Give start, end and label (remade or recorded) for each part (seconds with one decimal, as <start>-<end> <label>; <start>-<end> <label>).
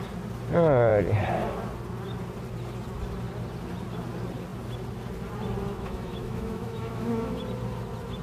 0.0-5.7 recorded; 5.7-7.4 remade; 7.4-8.2 recorded